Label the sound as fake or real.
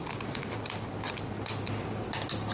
real